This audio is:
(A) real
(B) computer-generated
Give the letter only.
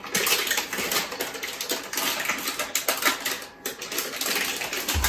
A